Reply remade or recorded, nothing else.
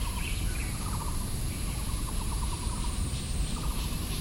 remade